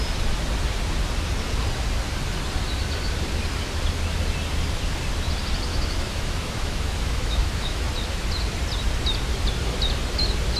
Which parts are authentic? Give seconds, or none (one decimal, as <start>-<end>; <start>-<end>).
0.0-5.7; 7.9-10.6